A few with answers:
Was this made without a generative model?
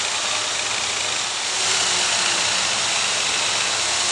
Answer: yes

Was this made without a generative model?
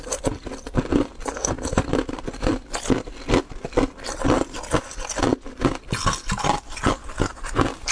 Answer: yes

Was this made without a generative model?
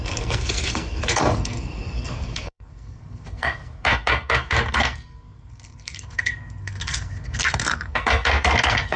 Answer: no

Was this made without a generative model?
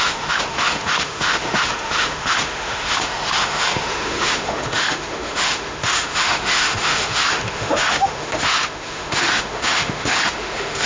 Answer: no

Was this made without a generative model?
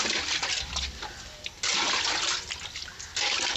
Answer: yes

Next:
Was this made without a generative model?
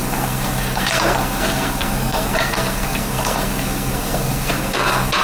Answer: no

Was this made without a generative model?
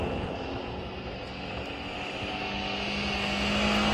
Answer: yes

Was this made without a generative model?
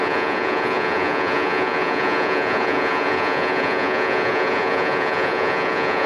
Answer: no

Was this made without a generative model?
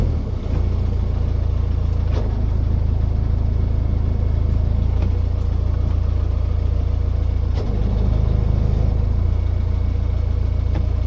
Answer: yes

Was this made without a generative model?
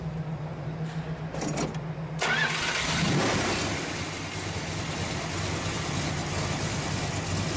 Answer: yes